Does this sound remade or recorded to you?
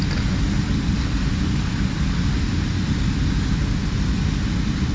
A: recorded